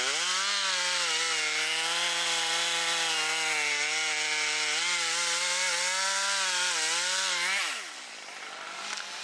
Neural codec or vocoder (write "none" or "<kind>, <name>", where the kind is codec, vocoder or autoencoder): none